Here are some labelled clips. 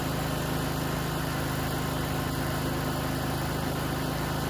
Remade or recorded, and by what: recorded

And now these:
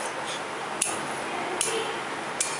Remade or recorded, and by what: recorded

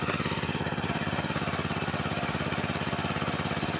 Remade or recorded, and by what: recorded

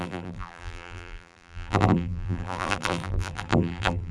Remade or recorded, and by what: remade, vocoder, BigVGAN v2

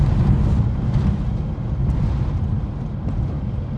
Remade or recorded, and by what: recorded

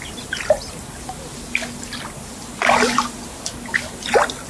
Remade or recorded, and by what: recorded